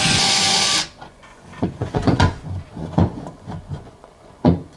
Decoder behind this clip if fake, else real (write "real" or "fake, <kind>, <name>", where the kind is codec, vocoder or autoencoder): fake, vocoder, Vocos